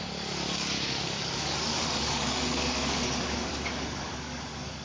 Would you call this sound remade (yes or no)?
yes